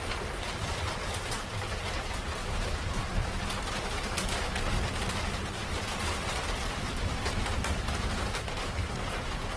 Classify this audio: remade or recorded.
recorded